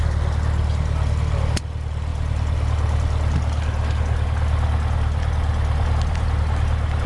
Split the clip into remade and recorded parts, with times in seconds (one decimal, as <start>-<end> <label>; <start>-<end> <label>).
0.0-7.1 recorded